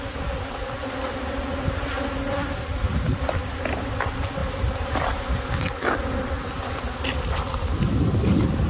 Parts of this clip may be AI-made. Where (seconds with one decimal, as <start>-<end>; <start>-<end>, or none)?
none